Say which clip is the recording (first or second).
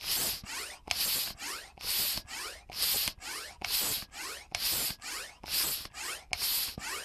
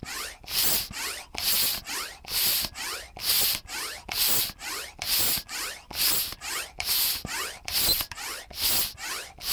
first